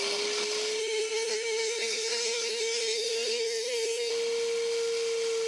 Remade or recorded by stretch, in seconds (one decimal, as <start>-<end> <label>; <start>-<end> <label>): 0.0-0.8 recorded; 0.8-4.1 remade; 4.1-5.5 recorded